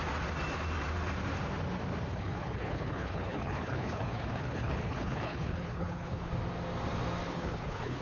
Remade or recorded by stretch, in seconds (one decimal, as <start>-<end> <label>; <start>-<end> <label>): 0.0-2.1 recorded; 2.1-6.3 remade; 6.3-7.3 recorded; 7.3-8.0 remade